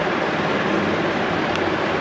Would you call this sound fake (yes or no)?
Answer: no